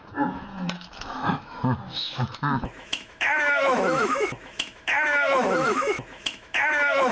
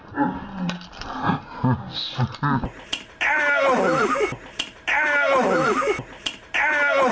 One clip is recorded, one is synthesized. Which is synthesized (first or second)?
first